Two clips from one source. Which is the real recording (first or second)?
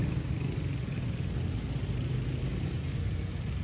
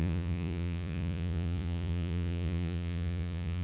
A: first